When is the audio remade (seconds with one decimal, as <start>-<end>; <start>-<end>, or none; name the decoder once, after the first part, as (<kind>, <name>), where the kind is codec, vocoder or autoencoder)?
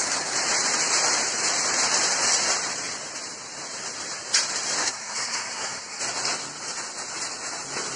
4.8-6.0 (codec, SNAC)